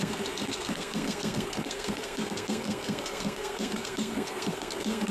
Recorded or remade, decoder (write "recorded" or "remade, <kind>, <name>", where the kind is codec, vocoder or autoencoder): remade, codec, SNAC